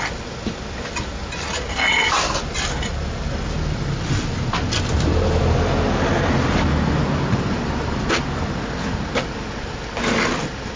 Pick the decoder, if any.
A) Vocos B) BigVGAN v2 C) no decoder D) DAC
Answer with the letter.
C